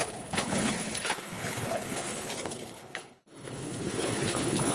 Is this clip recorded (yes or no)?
no